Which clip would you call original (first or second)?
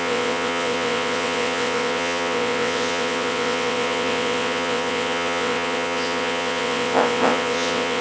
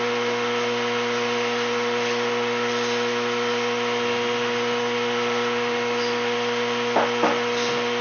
second